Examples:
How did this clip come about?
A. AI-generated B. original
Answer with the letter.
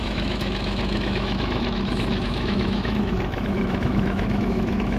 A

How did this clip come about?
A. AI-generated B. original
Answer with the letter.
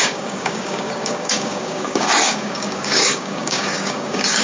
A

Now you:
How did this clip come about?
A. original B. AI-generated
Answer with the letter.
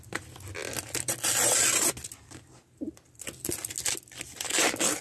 A